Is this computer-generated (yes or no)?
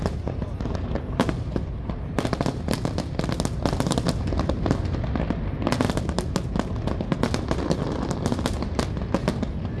no